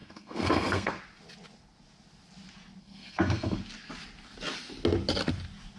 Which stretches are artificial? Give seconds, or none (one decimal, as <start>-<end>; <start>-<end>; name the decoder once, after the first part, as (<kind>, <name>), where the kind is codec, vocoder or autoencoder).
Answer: 0.0-1.0 (codec, SNAC); 2.8-3.6